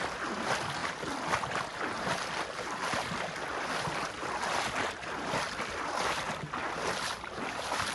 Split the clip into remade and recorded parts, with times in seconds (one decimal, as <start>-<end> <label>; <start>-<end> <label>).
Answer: 0.0-7.9 recorded